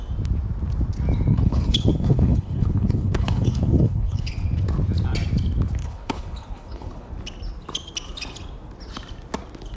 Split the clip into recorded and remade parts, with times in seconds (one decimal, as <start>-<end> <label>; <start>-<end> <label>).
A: 0.0-1.3 recorded; 1.3-4.3 remade; 4.3-5.8 recorded; 5.8-7.1 remade; 7.1-9.8 recorded